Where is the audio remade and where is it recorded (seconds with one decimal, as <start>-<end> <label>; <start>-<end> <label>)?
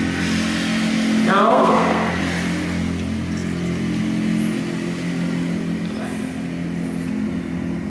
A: 0.0-1.5 recorded; 1.5-2.2 remade; 2.2-7.9 recorded